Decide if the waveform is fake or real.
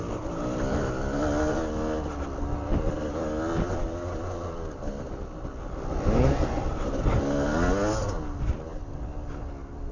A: real